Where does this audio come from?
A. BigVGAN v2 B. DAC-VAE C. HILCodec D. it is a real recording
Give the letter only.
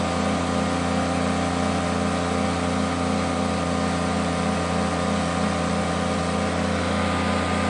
D